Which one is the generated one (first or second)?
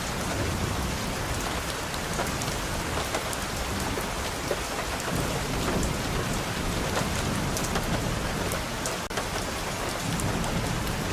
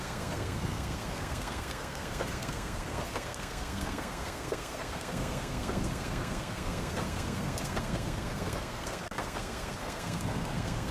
second